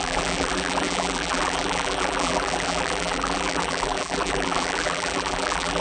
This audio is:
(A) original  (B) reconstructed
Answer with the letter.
B